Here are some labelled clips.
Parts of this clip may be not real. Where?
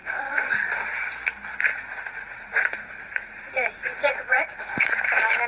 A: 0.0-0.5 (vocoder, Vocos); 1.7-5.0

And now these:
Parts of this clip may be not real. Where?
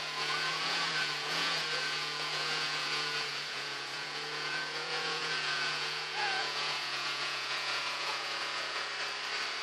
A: 0.0-8.9 (vocoder, Vocos)